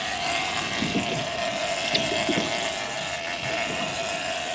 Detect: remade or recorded recorded